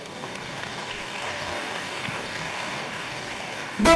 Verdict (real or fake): fake